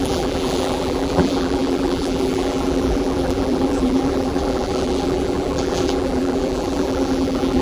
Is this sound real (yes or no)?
no